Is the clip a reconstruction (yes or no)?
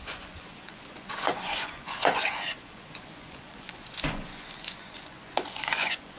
yes